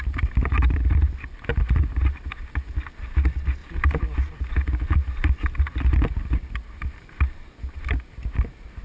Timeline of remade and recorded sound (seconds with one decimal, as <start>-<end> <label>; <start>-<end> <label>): 0.0-8.8 recorded